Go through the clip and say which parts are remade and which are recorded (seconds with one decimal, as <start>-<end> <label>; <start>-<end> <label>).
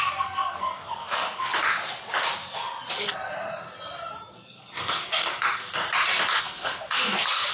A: 0.0-1.5 remade; 1.5-4.3 recorded; 4.3-5.8 remade; 5.8-6.4 recorded; 6.4-7.5 remade